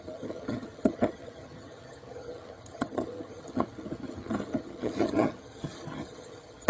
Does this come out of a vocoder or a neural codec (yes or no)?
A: yes